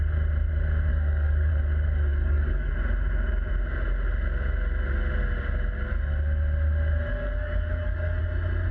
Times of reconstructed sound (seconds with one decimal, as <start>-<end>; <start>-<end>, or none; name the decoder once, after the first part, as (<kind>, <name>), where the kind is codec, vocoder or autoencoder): 0.9-1.5 (codec, DAC); 2.1-2.7; 7.1-8.2